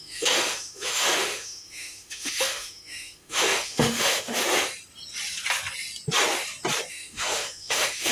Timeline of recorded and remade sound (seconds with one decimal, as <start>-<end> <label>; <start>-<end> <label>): 0.0-4.4 remade; 4.4-6.9 recorded; 6.9-8.1 remade